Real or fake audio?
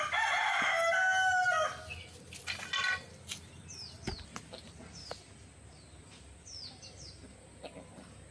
real